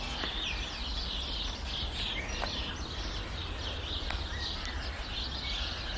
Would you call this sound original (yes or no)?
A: yes